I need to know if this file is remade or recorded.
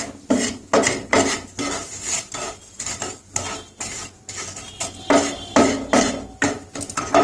recorded